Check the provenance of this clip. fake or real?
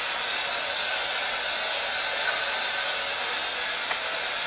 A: real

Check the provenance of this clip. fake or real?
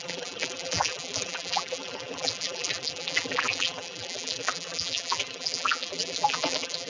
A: fake